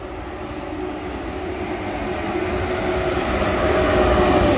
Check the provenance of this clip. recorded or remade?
recorded